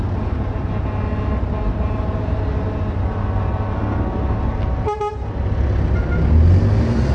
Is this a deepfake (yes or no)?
no